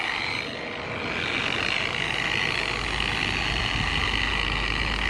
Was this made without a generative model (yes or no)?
yes